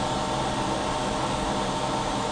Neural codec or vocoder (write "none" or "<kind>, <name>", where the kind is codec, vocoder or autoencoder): none